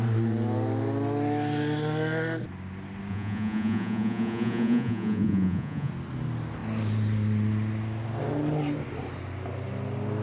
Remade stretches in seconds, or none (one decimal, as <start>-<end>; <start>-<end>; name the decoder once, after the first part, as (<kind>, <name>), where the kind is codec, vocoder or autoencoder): 3.1-5.9 (vocoder, Vocos)